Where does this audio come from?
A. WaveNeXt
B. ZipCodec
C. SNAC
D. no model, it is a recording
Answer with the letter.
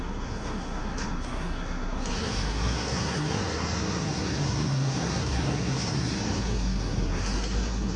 C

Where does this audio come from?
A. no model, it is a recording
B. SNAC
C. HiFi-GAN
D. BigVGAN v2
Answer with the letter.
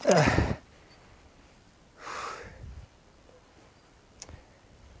D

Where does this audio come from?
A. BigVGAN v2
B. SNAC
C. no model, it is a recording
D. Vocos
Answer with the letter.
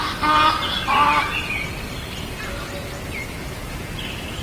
C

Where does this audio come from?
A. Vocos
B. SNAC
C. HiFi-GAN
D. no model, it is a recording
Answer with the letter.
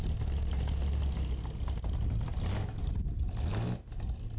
D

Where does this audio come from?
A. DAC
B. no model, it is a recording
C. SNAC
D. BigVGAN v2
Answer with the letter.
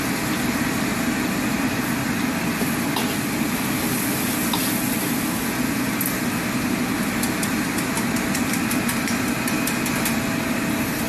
B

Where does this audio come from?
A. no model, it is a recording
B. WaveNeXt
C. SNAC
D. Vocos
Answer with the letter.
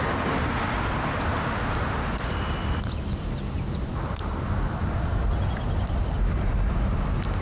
A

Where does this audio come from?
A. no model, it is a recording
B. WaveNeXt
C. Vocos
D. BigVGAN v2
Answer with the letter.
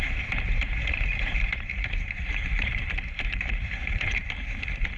D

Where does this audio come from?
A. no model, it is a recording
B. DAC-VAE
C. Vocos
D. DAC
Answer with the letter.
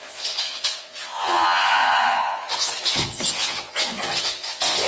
C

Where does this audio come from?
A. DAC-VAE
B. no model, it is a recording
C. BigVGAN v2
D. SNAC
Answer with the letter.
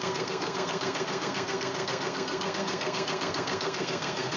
D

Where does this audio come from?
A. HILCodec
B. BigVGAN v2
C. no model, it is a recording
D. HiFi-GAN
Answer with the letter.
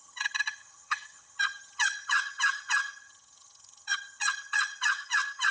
D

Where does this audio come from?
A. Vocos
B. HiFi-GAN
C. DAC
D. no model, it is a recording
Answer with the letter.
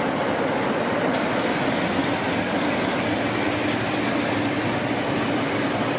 D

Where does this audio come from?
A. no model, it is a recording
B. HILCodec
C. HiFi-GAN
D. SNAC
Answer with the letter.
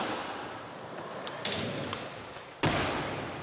A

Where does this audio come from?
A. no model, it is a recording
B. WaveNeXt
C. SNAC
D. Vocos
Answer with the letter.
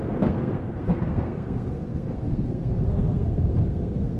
C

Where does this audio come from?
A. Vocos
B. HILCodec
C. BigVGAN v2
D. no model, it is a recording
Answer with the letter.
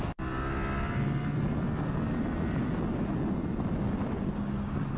D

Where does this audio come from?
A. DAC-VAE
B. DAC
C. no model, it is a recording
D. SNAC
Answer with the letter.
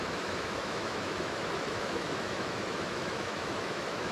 A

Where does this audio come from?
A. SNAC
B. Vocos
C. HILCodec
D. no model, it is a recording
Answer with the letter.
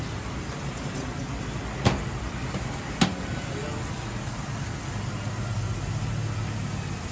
D